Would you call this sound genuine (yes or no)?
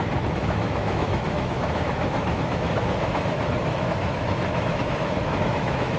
no